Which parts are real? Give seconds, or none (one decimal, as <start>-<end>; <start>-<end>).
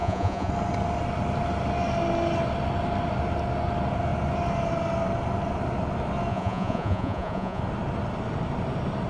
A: 0.5-6.3; 7.6-9.1